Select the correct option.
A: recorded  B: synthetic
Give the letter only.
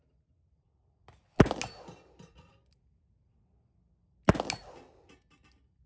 A